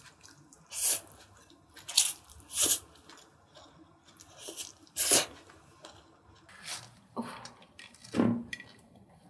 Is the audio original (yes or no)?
yes